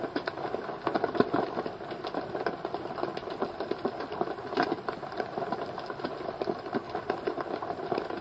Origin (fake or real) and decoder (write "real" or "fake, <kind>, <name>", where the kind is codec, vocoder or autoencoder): real